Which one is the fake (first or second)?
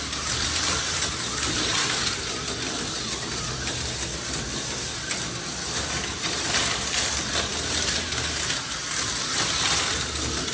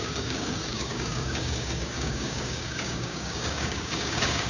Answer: second